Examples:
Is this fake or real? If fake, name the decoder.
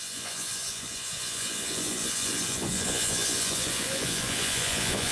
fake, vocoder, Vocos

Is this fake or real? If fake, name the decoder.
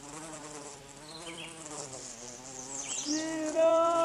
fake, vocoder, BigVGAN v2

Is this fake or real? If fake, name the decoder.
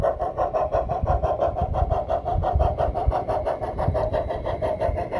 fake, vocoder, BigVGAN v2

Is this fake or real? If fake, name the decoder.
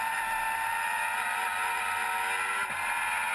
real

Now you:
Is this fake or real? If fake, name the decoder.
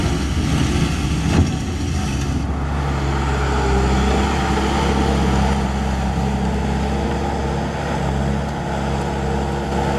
real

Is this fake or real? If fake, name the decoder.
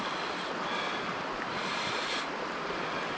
real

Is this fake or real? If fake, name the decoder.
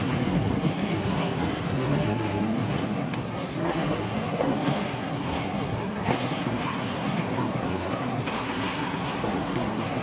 fake, codec, SNAC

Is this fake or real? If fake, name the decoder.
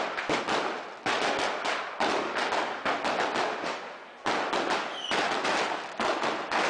real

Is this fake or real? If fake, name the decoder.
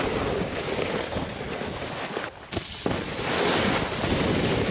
real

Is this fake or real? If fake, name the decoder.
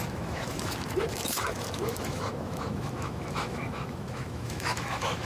fake, autoencoder, DAC-VAE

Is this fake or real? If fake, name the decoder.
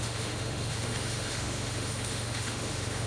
fake, autoencoder, DAC-VAE